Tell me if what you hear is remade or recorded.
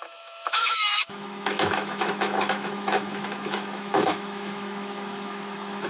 remade